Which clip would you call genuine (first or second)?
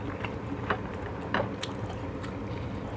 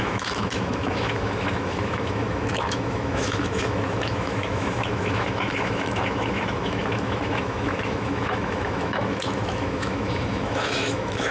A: first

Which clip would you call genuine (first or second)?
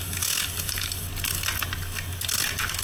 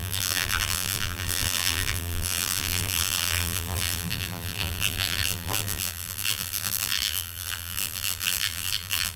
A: first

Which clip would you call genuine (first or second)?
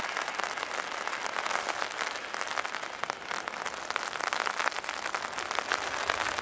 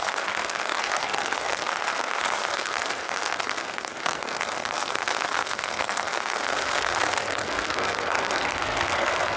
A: first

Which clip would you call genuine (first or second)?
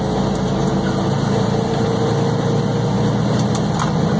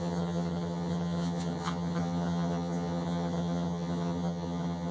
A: first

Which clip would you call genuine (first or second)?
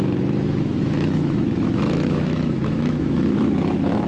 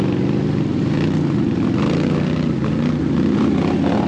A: second